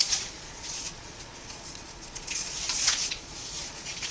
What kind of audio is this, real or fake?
fake